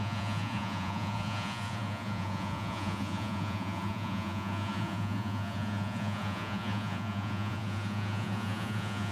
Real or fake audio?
fake